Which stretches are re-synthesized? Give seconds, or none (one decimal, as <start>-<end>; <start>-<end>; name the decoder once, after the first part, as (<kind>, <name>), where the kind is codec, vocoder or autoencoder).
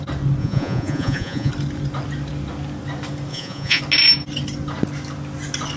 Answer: 0.4-1.5 (vocoder, Vocos); 3.3-3.8